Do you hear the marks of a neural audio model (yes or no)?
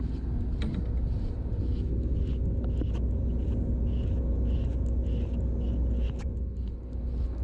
no